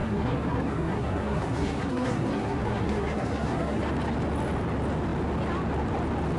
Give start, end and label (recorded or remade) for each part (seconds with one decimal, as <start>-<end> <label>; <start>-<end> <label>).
0.0-3.8 remade; 3.8-6.4 recorded